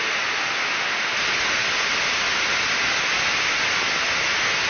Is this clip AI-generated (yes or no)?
no